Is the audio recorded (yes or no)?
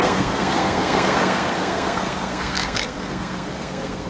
no